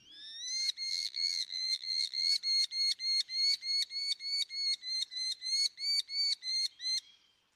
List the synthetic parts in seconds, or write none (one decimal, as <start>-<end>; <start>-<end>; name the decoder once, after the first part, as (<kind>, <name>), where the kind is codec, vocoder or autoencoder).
0.9-2.3 (vocoder, BigVGAN v2)